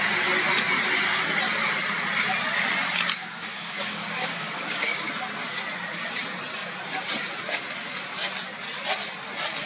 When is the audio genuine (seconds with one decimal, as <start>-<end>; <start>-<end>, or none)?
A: 0.0-3.2; 5.1-9.7